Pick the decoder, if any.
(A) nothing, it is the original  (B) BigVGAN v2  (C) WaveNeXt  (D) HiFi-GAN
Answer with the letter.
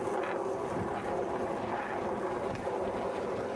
A